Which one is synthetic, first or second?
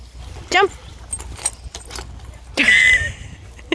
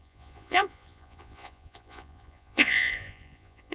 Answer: second